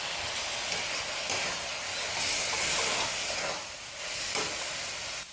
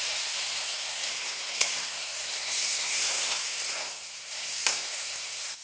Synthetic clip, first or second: second